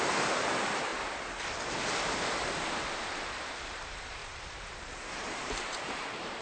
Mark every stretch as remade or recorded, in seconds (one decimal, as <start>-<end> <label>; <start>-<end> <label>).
0.0-0.9 remade; 0.9-3.0 recorded; 3.0-4.2 remade; 4.2-4.7 recorded; 4.7-6.4 remade